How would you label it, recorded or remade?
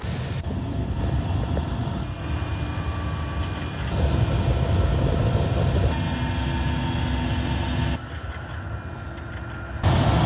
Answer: recorded